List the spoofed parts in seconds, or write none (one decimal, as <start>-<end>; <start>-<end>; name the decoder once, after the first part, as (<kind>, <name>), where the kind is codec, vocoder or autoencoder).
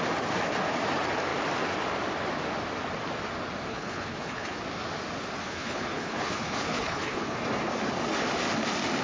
3.7-4.6 (codec, HILCodec); 5.4-7.4